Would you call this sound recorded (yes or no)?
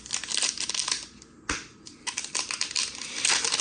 yes